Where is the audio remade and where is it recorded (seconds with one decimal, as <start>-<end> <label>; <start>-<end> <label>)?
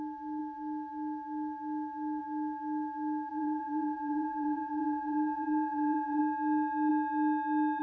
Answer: 0.0-3.3 recorded; 3.3-6.2 remade; 6.2-7.8 recorded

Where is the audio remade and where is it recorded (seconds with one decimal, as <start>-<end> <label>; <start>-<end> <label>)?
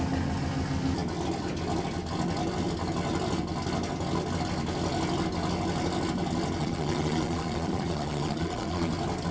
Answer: 0.0-6.6 recorded; 6.6-8.9 remade; 8.9-9.3 recorded